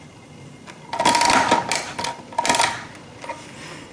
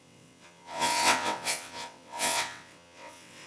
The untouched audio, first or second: first